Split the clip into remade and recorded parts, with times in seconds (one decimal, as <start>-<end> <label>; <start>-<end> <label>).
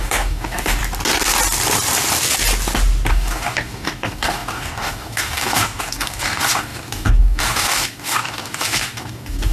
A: 0.0-0.8 remade; 0.8-3.1 recorded; 3.1-9.5 remade